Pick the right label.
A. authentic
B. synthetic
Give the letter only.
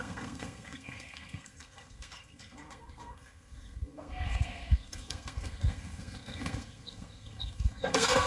B